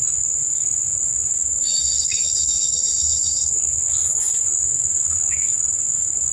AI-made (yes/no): yes